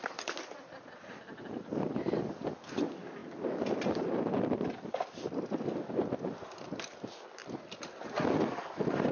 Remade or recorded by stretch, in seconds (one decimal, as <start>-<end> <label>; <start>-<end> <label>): 0.0-9.1 recorded